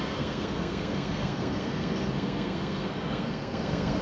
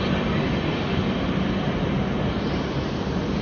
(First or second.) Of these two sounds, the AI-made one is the first